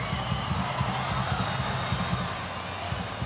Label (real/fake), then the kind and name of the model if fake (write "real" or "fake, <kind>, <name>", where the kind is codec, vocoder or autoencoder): real